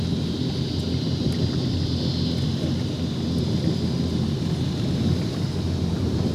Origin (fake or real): real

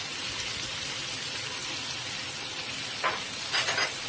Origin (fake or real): real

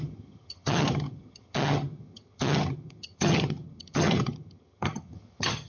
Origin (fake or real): fake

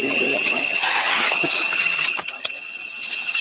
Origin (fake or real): fake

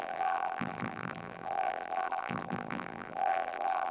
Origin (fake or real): fake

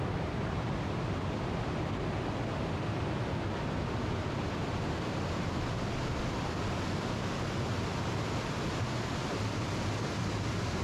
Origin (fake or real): real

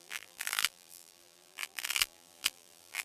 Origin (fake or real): fake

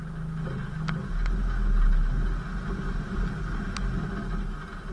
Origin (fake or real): real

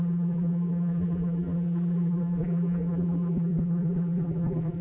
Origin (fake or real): fake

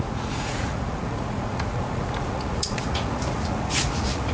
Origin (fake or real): fake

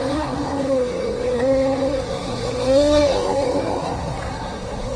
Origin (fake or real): fake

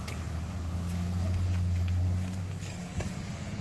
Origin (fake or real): fake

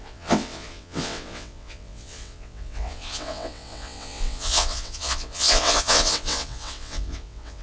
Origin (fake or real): fake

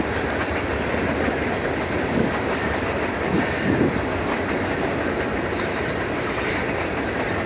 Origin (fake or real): real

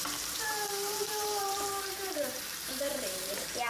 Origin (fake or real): fake